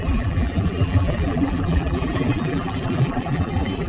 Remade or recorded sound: remade